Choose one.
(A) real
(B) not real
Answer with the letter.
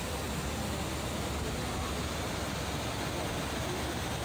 A